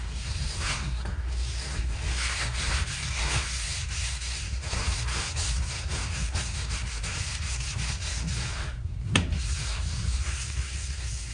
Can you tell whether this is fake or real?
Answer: fake